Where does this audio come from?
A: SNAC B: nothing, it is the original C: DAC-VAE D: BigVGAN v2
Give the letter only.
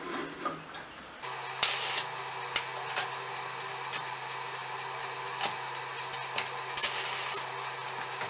B